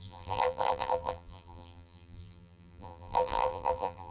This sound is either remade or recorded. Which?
remade